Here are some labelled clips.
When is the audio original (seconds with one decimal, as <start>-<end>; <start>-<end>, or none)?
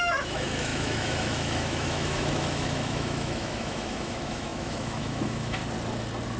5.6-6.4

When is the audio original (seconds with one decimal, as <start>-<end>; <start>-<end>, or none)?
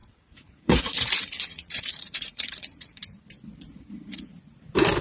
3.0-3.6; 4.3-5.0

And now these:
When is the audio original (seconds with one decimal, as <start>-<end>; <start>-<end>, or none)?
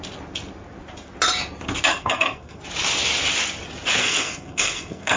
0.0-1.9; 2.6-4.0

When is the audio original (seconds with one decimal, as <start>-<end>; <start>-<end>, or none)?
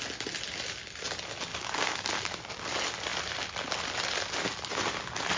0.0-1.5; 2.6-5.4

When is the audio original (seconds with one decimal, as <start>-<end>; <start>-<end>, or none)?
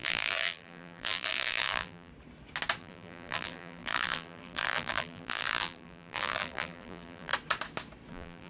2.1-2.8; 7.3-8.1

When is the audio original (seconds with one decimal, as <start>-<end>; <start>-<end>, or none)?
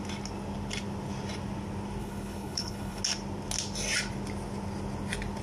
0.0-2.0; 3.0-5.4